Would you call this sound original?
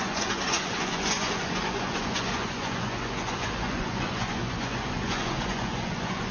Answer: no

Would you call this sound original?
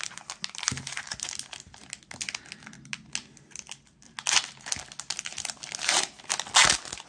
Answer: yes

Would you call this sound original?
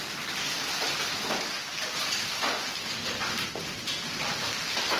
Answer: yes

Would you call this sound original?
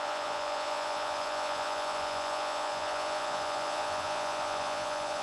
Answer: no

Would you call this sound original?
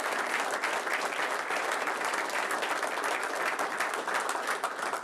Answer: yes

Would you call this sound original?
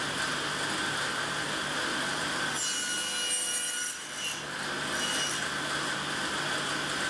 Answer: yes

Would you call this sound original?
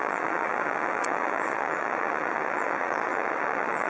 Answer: no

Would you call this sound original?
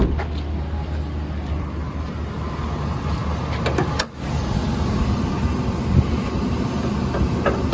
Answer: yes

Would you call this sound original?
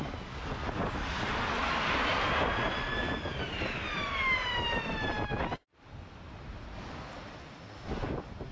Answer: yes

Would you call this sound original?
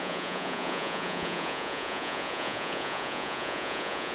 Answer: no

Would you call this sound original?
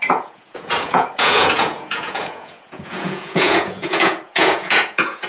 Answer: no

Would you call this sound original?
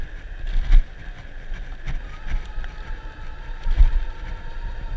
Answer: yes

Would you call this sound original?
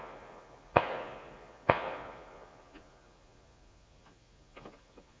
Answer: no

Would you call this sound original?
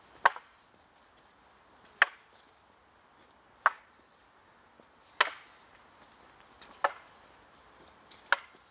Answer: yes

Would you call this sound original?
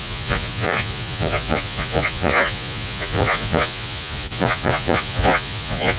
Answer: no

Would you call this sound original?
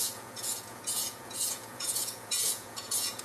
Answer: no